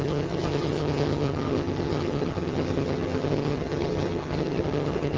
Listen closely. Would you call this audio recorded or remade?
remade